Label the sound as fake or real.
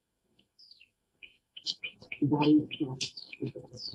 fake